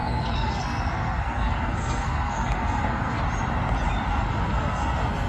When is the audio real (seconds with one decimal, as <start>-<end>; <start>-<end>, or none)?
3.2-4.1